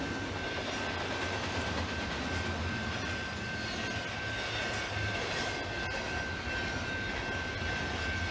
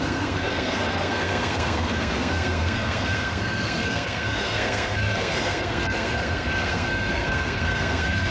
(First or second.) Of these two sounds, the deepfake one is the second